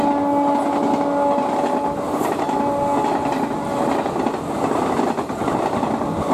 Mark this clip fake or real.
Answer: real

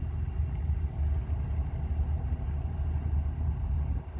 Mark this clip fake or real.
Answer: real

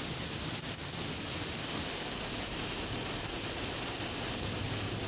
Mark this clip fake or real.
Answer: real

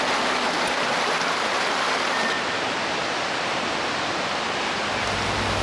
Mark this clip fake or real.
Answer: real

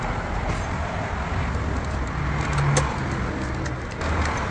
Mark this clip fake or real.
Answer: real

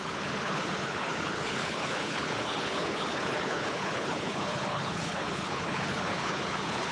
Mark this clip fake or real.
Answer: fake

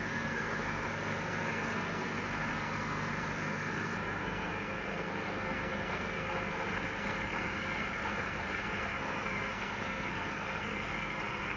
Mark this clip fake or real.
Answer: fake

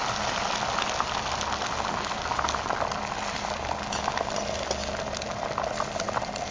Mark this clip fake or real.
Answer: real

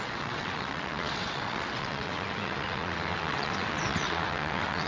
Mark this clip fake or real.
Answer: fake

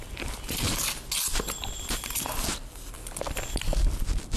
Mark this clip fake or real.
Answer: real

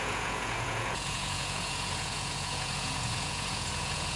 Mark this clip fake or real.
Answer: fake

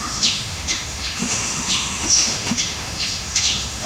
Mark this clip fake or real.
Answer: fake